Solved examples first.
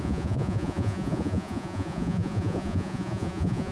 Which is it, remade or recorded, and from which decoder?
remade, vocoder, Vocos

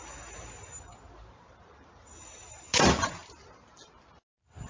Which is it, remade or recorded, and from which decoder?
recorded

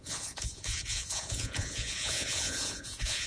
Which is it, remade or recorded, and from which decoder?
remade, vocoder, Vocos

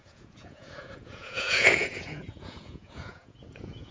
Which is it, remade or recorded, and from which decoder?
remade, vocoder, Vocos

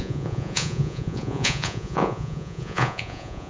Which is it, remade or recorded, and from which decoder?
remade, vocoder, Vocos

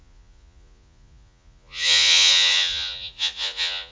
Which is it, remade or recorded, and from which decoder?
remade, vocoder, Vocos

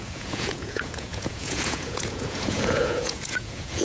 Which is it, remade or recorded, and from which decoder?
remade, vocoder, Vocos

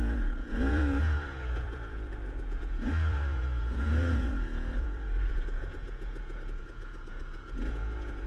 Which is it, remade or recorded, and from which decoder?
remade, vocoder, Vocos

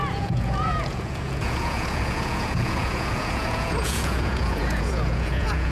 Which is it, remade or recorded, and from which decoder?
remade, vocoder, Vocos